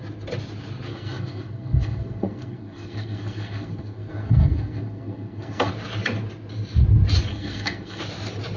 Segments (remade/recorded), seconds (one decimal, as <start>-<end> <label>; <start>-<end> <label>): 0.0-0.9 recorded; 0.9-5.7 remade; 5.7-7.3 recorded; 7.3-8.0 remade; 8.0-8.6 recorded